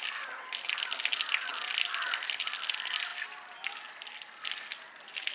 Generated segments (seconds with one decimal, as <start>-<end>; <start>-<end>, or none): none